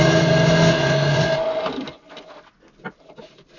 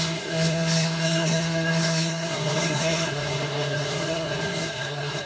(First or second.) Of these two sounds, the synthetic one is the second